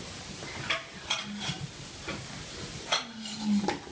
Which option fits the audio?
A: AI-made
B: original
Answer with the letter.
B